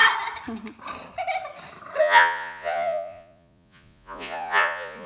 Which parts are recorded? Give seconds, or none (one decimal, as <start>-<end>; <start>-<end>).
0.0-2.0